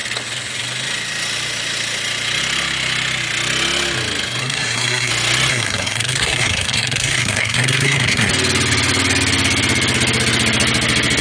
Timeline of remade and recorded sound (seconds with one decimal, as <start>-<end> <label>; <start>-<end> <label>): 0.0-4.4 recorded; 4.4-5.1 remade; 5.1-5.5 recorded; 5.5-8.3 remade; 8.3-11.2 recorded